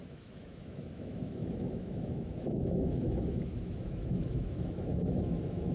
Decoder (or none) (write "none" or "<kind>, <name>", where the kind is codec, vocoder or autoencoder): autoencoder, DAC-VAE